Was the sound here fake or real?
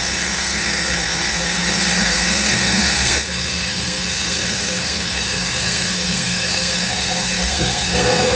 fake